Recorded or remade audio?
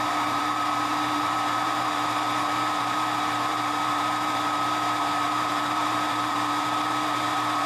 remade